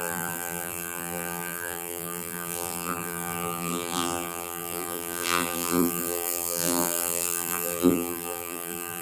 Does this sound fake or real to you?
fake